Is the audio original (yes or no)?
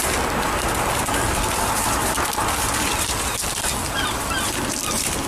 yes